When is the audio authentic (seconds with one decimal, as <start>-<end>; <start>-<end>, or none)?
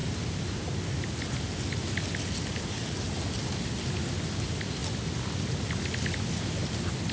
0.0-7.1